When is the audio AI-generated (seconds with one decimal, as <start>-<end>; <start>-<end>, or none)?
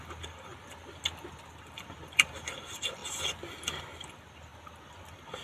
0.0-0.5; 1.6-4.5; 5.0-5.4